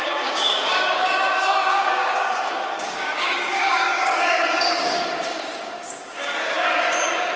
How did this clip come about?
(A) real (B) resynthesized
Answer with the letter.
B